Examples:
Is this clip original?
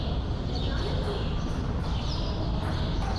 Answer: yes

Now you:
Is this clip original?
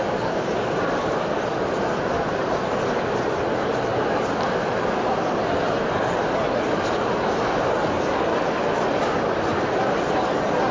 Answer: yes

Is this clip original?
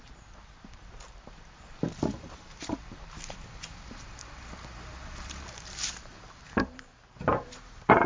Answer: no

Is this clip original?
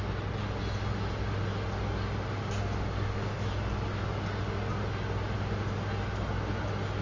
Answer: yes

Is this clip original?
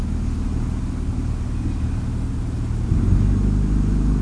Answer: yes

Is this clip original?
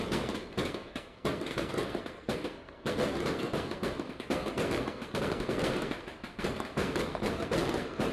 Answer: no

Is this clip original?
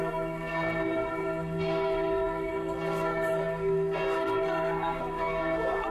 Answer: no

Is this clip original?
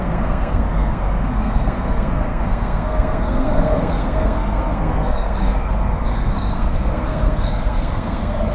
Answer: no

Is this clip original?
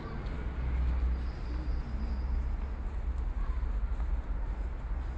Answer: yes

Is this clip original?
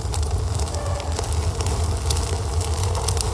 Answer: yes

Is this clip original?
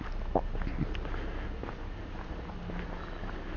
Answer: yes